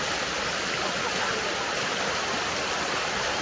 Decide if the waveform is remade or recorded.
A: recorded